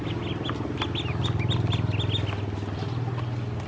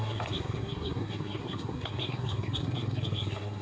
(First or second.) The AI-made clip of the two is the second